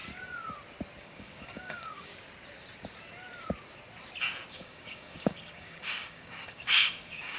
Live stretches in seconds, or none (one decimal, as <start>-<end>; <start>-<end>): 0.0-1.0; 2.1-4.5